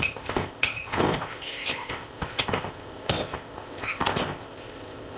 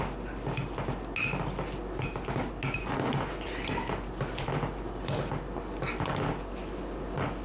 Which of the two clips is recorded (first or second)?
second